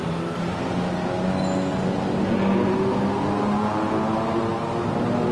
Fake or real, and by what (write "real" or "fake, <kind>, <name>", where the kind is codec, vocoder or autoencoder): real